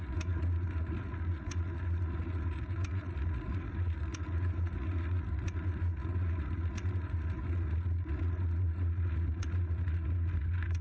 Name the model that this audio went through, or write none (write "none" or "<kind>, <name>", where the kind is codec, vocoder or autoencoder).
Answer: vocoder, Vocos